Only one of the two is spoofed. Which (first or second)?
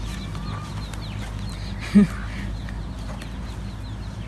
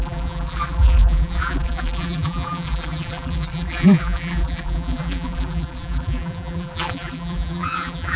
second